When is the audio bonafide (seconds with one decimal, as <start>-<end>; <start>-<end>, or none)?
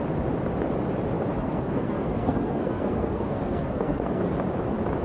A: 0.0-1.3; 4.3-5.0